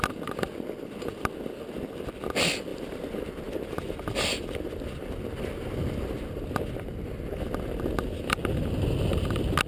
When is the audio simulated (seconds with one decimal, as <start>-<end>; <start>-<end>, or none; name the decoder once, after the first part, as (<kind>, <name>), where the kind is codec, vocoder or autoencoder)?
none